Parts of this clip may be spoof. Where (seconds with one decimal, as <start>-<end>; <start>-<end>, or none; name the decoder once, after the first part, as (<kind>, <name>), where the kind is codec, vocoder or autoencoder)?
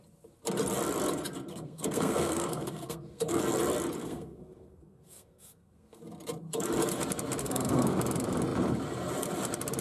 1.5-3.4 (codec, SNAC); 4.0-6.0; 7.4-8.0